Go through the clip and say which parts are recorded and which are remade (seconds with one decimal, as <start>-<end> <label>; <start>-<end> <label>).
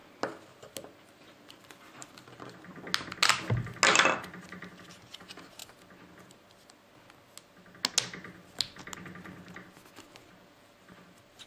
0.0-1.0 recorded; 1.0-2.7 remade; 2.7-4.9 recorded; 4.9-5.6 remade; 5.6-9.9 recorded; 9.9-11.5 remade